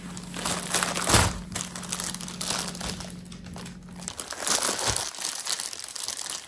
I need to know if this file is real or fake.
real